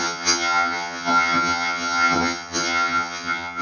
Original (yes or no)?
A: no